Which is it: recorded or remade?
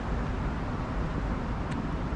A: recorded